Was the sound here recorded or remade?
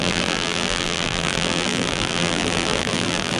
remade